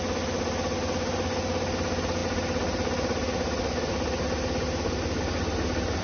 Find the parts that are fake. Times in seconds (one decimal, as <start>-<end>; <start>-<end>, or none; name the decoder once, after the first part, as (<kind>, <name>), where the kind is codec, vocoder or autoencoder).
none